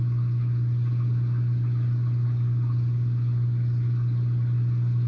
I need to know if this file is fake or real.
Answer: real